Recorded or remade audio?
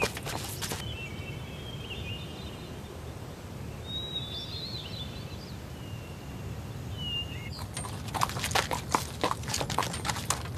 recorded